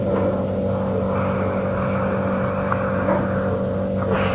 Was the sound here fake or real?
real